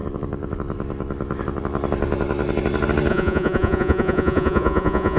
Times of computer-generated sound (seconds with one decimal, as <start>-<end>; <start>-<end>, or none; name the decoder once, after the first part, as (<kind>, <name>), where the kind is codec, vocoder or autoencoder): 3.1-5.2 (vocoder, Vocos)